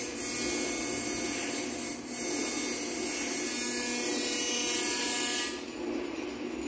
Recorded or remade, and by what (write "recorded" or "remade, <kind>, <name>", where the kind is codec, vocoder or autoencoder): recorded